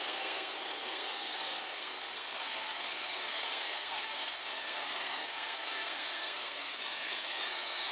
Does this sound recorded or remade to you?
remade